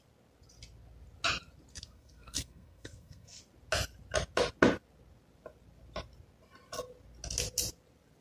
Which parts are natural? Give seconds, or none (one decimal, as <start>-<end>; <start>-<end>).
0.0-1.7; 3.4-8.2